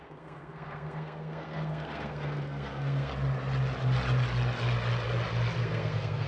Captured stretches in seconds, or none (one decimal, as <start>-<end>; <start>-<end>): 3.1-5.6